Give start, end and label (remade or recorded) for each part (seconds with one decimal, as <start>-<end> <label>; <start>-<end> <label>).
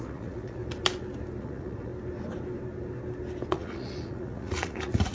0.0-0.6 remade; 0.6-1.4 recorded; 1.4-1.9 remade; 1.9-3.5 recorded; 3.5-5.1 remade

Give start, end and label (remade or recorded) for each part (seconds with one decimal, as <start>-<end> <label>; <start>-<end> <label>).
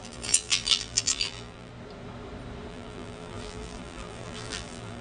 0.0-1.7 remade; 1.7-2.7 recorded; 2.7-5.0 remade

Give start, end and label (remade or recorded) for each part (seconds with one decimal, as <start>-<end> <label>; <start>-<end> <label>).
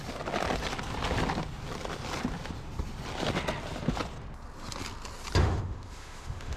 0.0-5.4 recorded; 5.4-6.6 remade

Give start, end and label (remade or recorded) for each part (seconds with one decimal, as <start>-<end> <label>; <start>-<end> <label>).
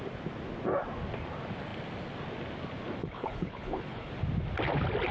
0.0-3.0 recorded; 3.0-4.1 remade; 4.1-5.1 recorded